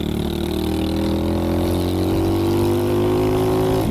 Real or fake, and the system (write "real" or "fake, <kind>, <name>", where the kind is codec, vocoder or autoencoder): real